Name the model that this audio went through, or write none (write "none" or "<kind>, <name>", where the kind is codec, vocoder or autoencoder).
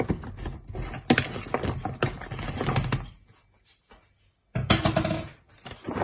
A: none